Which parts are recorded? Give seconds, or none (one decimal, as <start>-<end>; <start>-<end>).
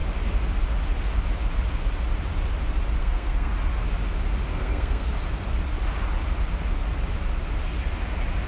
0.0-3.0; 3.5-4.5; 5.1-8.5